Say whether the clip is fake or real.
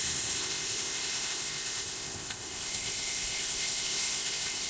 fake